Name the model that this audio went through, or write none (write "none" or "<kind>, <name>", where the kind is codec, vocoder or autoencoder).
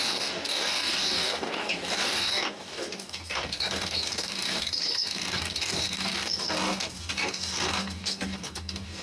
codec, DAC